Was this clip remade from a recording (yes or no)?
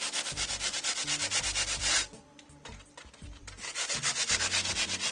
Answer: no